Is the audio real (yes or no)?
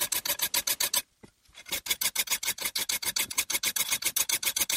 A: yes